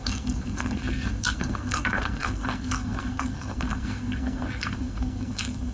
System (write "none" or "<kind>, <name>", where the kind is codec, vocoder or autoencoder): codec, SNAC